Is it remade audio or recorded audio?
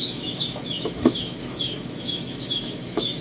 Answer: remade